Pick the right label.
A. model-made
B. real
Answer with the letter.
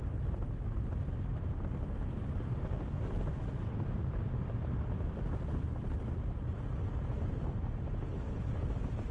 B